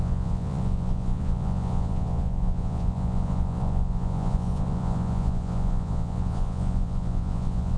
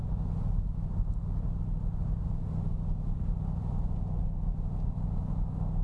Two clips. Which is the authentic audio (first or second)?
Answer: second